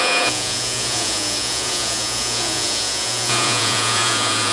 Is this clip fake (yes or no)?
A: yes